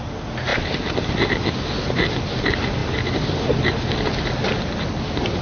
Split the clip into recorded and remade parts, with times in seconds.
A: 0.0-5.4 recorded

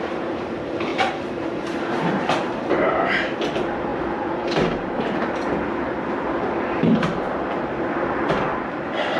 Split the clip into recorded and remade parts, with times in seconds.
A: 0.0-9.2 remade